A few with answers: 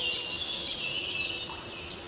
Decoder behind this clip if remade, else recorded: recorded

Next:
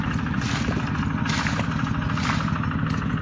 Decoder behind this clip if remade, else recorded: recorded